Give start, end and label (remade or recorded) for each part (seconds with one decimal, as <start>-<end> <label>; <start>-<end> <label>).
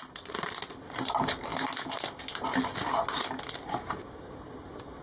0.0-5.0 recorded